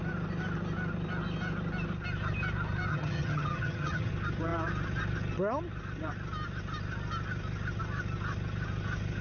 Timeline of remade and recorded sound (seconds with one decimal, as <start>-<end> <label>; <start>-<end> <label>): 0.0-2.9 recorded; 2.9-4.1 remade; 4.1-9.2 recorded